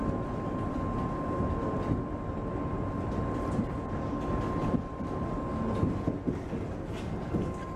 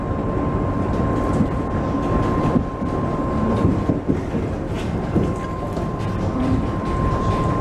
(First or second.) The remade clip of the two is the second